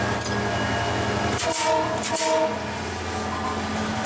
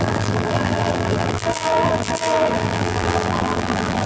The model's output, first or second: second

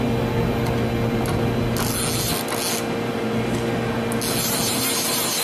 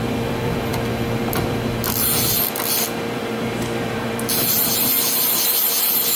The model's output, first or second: second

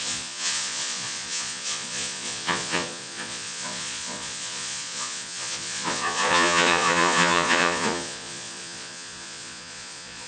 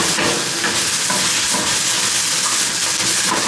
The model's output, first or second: first